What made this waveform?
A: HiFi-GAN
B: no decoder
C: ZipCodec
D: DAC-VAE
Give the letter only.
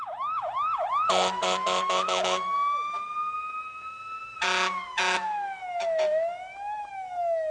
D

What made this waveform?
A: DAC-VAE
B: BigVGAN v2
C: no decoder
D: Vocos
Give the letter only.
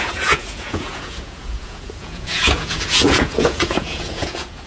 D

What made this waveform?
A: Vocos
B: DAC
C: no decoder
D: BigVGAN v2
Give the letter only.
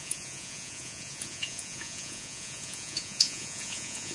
A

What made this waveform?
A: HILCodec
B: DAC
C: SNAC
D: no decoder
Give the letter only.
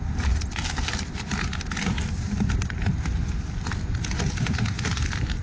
D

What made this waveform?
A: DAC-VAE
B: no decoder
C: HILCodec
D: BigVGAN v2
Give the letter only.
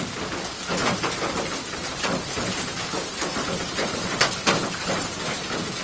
B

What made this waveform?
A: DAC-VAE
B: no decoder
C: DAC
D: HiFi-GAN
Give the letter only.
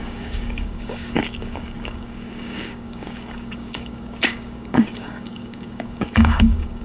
C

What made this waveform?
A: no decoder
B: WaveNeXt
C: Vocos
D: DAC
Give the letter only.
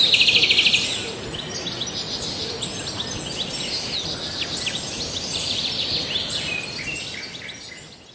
A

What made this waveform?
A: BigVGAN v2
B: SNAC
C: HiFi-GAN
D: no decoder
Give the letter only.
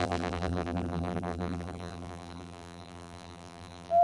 A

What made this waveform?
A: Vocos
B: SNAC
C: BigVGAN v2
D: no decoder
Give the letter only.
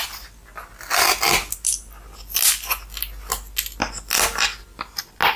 D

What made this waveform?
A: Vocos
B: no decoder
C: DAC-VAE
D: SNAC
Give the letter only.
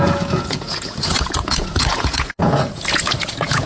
A